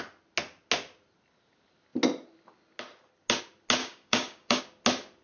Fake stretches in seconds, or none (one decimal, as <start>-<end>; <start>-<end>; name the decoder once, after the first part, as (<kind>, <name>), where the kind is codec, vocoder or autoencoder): 3.8-4.6 (codec, DAC)